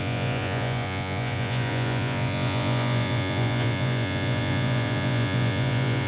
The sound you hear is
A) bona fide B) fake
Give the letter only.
B